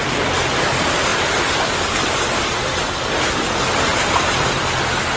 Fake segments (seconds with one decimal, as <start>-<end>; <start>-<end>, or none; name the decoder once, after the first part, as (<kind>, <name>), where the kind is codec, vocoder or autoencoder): 1.1-2.8 (vocoder, BigVGAN v2); 3.9-4.8